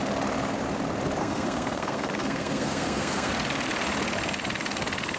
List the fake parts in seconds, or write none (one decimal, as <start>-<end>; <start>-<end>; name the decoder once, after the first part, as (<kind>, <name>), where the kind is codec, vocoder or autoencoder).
1.2-3.3 (codec, SNAC)